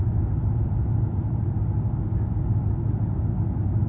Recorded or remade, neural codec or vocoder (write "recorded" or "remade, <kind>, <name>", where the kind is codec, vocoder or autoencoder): recorded